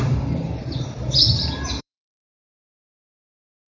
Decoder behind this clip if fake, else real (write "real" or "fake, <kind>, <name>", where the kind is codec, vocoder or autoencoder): fake, vocoder, BigVGAN v2